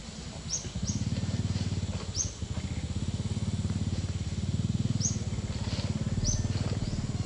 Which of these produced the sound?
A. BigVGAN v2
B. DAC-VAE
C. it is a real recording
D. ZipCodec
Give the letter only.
C